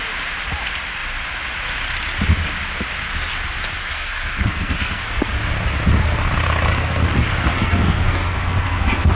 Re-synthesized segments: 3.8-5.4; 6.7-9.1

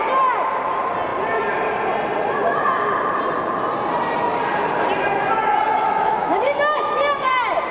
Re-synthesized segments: 5.7-7.3

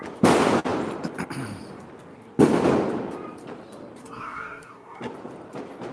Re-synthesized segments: 4.0-5.1

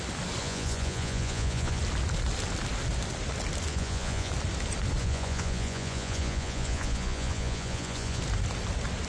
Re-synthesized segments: 0.4-1.8; 3.7-4.3; 5.0-8.2

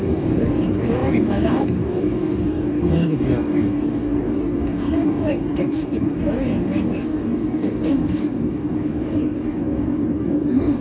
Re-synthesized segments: 0.0-10.8

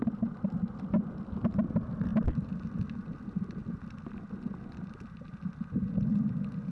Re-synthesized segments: 0.0-0.5

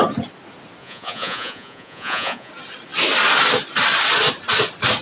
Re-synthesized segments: 0.8-2.5